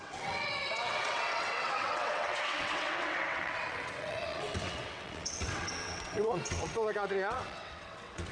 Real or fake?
fake